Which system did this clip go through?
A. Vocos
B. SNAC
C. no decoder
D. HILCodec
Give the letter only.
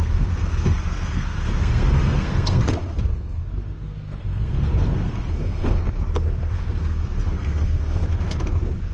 B